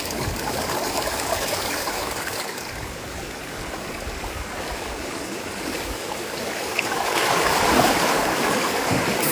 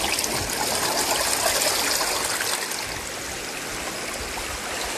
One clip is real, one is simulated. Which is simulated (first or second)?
first